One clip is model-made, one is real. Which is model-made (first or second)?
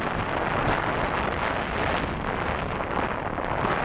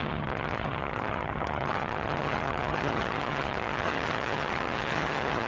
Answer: second